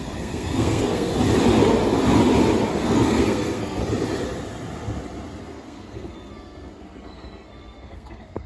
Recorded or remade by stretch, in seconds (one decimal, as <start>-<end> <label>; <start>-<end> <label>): 0.0-1.1 remade; 1.1-2.7 recorded; 2.7-3.8 remade; 3.8-5.4 recorded; 5.4-8.5 remade